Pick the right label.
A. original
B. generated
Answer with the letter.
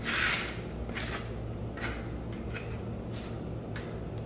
A